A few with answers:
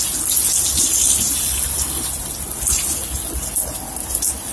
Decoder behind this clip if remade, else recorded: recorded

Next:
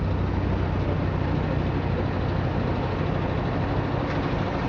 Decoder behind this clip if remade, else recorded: recorded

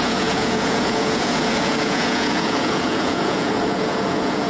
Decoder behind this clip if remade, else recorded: remade, vocoder, Vocos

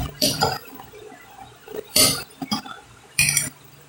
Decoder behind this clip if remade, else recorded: remade, vocoder, BigVGAN v2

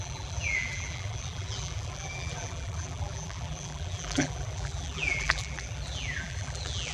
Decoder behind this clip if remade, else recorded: remade, vocoder, BigVGAN v2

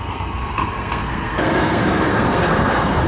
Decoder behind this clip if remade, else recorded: remade, codec, SNAC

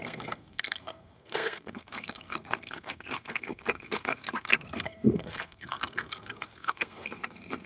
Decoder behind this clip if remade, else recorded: remade, codec, SNAC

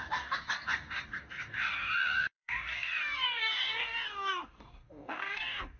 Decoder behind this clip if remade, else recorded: remade, codec, DAC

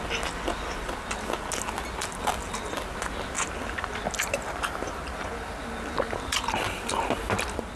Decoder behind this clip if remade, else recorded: recorded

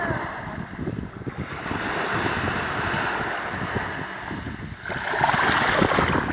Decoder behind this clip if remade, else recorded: recorded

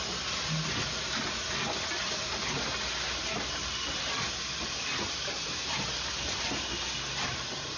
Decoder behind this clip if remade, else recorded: recorded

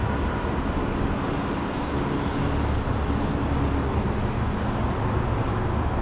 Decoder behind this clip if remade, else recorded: recorded